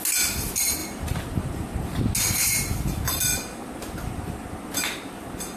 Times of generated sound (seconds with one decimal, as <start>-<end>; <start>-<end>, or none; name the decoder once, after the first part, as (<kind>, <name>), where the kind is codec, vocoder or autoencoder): 0.8-2.0 (vocoder, BigVGAN v2); 3.5-4.4